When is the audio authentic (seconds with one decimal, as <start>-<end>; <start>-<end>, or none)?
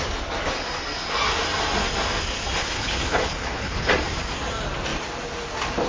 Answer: 0.0-2.6; 3.9-5.9